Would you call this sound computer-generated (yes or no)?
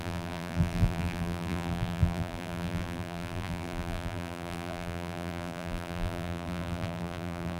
yes